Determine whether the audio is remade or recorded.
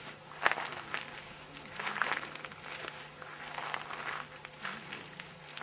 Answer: recorded